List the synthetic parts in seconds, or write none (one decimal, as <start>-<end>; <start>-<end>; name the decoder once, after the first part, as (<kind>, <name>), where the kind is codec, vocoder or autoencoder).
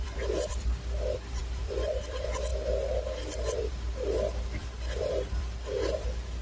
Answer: 0.0-6.4 (vocoder, BigVGAN v2)